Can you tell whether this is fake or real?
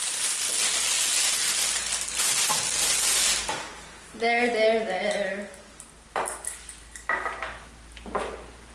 real